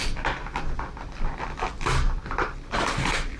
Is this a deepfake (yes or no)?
no